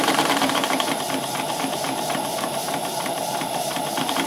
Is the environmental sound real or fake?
fake